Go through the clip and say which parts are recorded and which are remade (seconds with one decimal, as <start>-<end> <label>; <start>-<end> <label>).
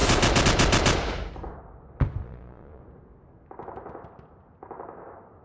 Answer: 0.0-2.2 recorded; 2.2-2.8 remade; 2.8-5.4 recorded